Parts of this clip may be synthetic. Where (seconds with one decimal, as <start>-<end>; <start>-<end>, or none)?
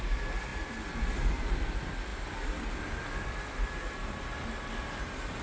none